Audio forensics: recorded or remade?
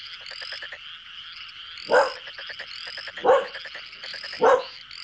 recorded